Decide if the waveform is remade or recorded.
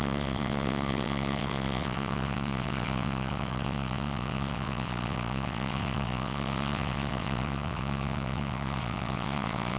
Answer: remade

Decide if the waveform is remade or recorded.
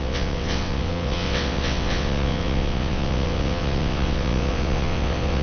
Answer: remade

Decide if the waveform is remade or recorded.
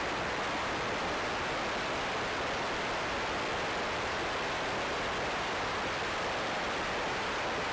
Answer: recorded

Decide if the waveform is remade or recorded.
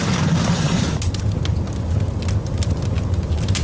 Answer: recorded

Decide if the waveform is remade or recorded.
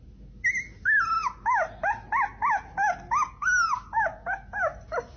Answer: recorded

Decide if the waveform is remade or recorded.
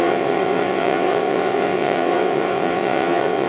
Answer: remade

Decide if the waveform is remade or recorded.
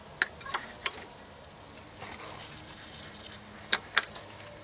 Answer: recorded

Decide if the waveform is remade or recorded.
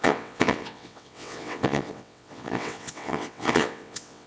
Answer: remade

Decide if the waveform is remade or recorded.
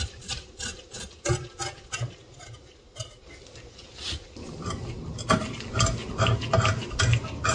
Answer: recorded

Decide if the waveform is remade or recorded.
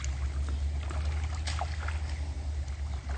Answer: recorded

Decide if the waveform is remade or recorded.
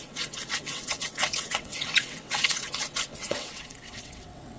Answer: remade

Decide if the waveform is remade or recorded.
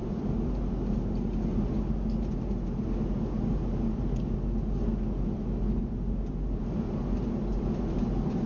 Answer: recorded